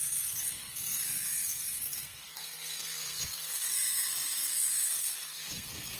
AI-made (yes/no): yes